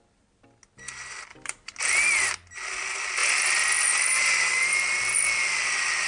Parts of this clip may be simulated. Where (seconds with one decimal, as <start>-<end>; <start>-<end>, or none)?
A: none